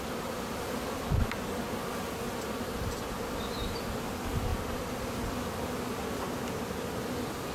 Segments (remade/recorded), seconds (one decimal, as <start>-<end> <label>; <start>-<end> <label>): 0.0-7.5 recorded